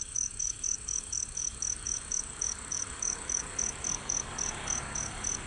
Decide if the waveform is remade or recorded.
remade